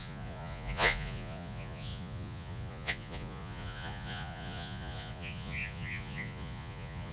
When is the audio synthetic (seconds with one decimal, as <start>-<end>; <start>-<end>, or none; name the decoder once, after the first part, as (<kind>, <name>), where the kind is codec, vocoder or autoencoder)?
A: 0.0-7.1 (vocoder, Vocos)